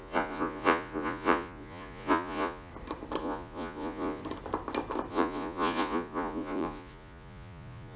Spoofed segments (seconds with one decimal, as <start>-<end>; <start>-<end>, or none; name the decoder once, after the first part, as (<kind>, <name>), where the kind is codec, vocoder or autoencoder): 0.0-2.7 (vocoder, Vocos); 3.2-4.2; 5.1-8.0